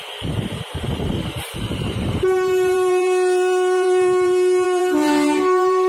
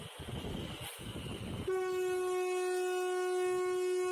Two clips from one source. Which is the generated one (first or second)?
first